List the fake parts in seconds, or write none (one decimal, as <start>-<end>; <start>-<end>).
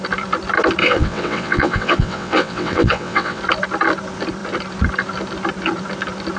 0.8-3.4